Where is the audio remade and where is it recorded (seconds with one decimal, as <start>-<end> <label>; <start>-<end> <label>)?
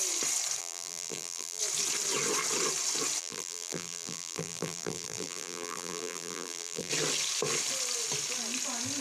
0.0-0.6 recorded; 0.6-1.6 remade; 1.6-3.2 recorded; 3.2-6.9 remade; 6.9-9.0 recorded